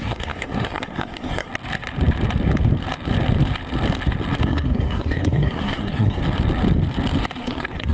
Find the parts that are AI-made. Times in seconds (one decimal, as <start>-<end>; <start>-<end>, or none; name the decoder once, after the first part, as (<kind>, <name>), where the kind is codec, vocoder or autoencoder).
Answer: 0.0-1.5 (codec, SNAC); 4.4-6.2; 7.4-7.9